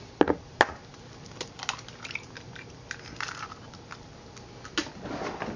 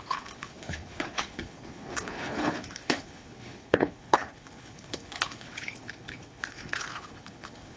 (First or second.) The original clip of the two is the first